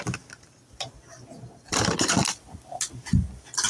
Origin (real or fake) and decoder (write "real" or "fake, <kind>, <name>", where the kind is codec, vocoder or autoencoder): real